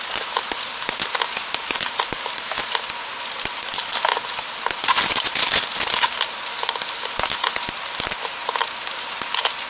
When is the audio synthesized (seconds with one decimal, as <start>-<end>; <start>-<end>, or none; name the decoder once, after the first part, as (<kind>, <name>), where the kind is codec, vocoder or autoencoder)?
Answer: none